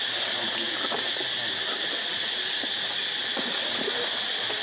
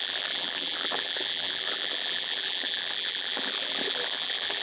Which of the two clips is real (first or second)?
first